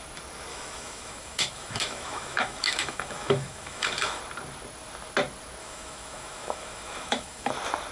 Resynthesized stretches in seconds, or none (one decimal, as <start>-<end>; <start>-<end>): 0.5-4.2; 5.6-7.5